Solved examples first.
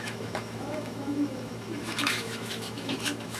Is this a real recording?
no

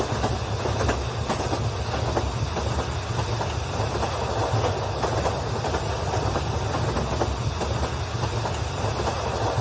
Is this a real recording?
yes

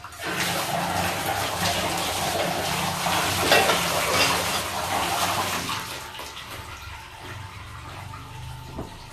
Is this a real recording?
yes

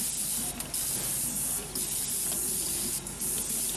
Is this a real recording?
yes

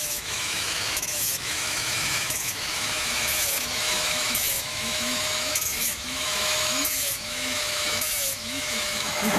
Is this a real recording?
no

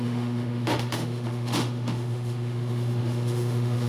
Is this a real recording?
no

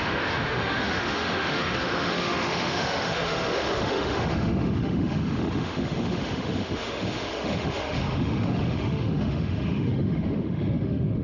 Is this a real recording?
no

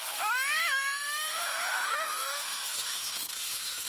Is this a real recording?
no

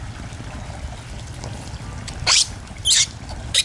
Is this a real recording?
yes